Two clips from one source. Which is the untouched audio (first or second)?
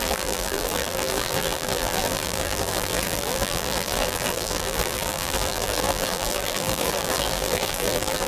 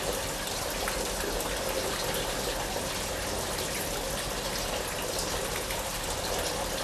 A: second